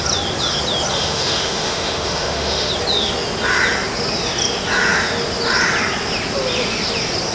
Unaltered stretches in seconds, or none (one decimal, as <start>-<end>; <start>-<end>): 0.0-0.9; 2.7-7.3